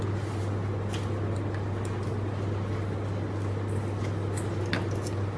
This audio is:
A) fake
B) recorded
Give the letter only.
B